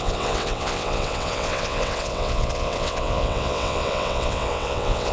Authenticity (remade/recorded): remade